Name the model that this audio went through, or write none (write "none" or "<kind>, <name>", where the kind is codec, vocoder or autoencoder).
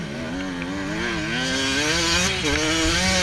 none